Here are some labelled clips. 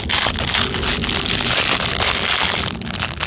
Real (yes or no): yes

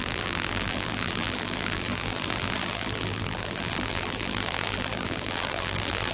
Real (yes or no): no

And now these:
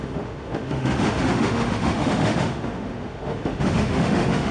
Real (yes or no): no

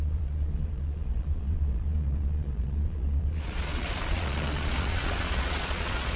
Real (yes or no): no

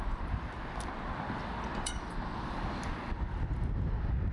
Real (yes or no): yes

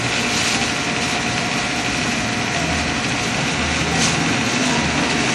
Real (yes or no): yes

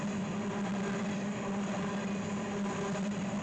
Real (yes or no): yes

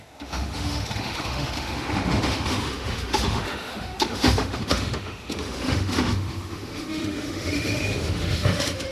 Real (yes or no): no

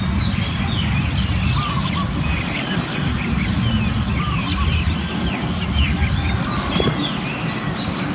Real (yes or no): yes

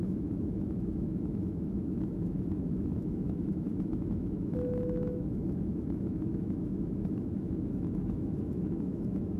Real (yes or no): no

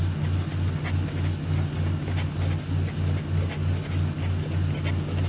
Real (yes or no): yes